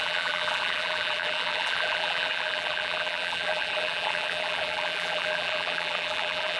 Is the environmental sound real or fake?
fake